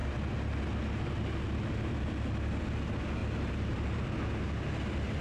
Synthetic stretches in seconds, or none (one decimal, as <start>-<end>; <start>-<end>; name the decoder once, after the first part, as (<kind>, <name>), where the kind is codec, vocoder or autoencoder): 3.2-4.1 (vocoder, BigVGAN v2)